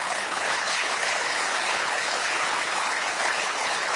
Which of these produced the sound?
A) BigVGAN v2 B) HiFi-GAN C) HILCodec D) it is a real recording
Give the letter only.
C